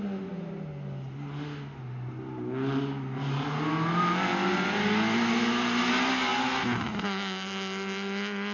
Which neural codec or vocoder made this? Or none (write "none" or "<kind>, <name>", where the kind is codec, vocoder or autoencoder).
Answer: none